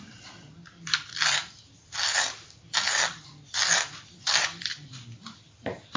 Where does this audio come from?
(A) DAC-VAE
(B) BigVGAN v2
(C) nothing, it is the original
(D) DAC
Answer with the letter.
B